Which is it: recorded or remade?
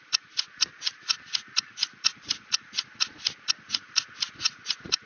remade